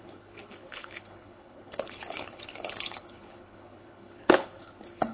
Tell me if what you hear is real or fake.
fake